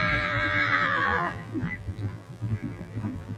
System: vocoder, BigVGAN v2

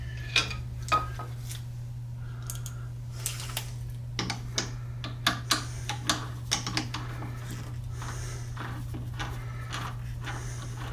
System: none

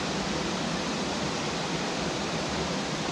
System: vocoder, BigVGAN v2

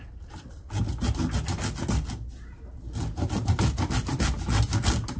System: none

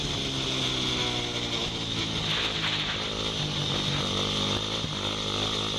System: none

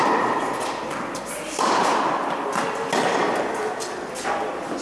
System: none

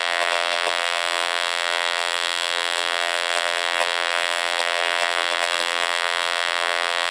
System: vocoder, BigVGAN v2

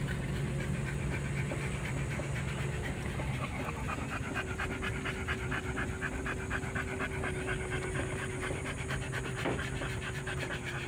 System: none